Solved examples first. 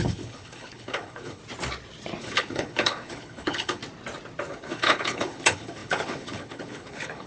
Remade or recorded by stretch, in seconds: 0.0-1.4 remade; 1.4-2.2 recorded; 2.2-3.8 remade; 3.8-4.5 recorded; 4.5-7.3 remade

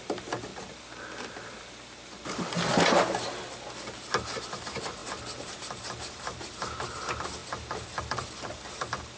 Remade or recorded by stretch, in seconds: 0.0-0.5 remade; 0.5-4.4 recorded; 4.4-5.0 remade; 5.0-5.5 recorded; 5.5-7.4 remade; 7.4-8.0 recorded; 8.0-9.2 remade